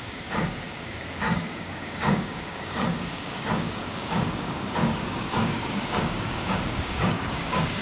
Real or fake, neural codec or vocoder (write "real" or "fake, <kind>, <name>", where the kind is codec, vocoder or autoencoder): fake, codec, DAC